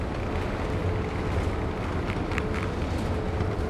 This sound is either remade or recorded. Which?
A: recorded